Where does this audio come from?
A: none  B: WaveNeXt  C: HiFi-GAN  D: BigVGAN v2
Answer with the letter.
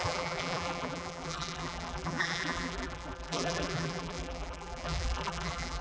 D